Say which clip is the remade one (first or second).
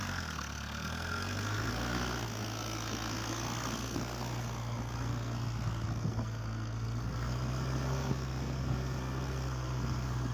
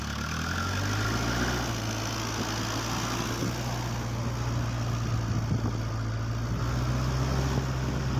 first